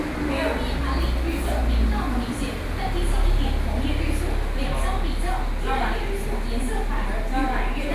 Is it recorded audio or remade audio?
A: recorded